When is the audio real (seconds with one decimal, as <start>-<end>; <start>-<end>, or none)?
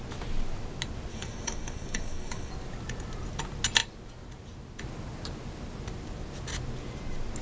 0.0-1.1; 2.5-7.4